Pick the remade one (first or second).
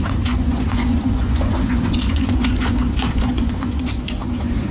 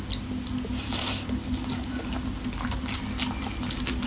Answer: first